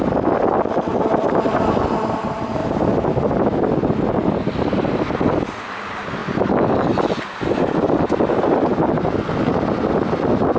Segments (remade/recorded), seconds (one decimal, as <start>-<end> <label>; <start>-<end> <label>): 0.0-10.6 recorded